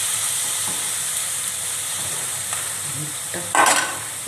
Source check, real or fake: fake